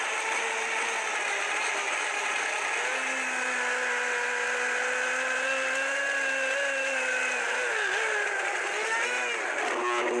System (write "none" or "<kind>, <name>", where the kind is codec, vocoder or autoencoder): none